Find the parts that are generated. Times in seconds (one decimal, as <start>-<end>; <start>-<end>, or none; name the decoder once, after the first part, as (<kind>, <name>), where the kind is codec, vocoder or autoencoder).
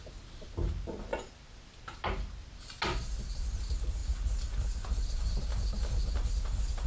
none